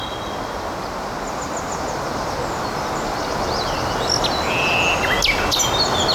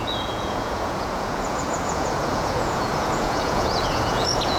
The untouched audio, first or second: first